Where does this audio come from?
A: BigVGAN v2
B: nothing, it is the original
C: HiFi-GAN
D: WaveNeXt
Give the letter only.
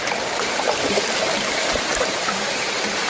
A